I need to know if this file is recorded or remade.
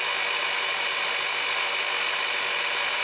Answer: recorded